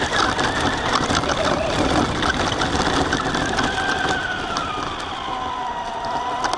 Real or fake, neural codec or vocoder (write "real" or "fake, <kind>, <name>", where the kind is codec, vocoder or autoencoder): real